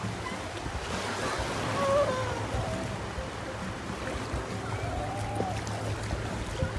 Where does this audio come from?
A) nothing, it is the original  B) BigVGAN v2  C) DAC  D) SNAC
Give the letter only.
A